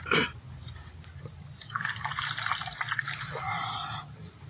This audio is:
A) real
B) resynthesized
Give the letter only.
A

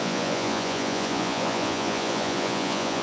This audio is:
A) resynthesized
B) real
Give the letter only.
A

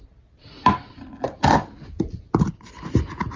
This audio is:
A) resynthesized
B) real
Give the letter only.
B